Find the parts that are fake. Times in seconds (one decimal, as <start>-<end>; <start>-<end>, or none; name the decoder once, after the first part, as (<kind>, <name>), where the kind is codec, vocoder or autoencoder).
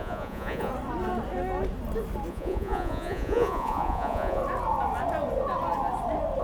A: 0.0-0.7 (vocoder, Vocos); 2.3-4.4